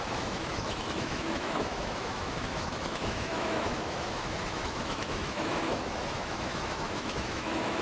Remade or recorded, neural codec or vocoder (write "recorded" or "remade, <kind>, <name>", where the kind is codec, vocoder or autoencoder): remade, autoencoder, DAC-VAE